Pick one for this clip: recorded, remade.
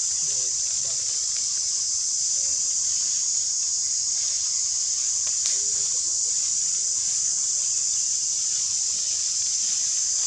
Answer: recorded